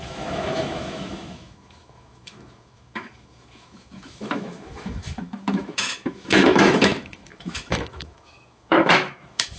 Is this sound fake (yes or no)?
yes